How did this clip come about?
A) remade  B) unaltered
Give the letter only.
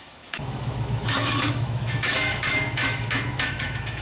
A